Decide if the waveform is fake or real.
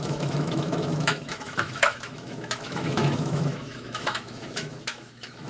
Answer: fake